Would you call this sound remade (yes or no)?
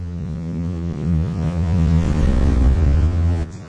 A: yes